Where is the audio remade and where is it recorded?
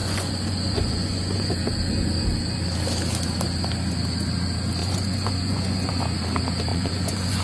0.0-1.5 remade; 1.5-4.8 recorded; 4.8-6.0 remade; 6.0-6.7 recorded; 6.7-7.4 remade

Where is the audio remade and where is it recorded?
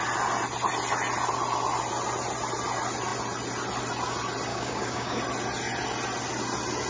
0.0-4.5 recorded; 4.5-5.2 remade; 5.2-6.9 recorded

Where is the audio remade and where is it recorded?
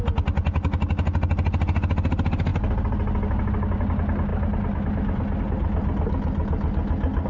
0.0-7.3 recorded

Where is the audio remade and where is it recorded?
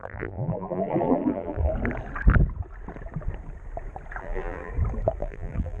0.0-1.7 remade; 1.7-4.2 recorded; 4.2-4.7 remade; 4.7-5.2 recorded; 5.2-5.8 remade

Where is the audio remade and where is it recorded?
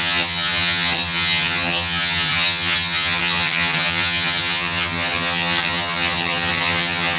0.0-7.2 remade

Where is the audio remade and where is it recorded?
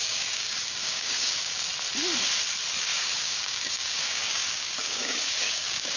0.0-1.7 remade; 1.7-2.8 recorded; 2.8-6.0 remade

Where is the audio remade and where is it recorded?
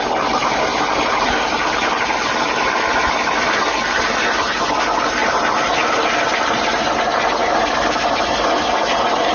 0.0-9.3 recorded